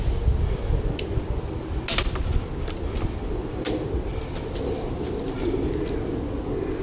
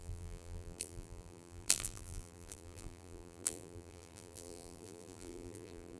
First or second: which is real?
first